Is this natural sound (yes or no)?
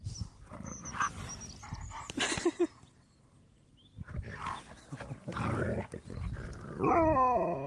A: yes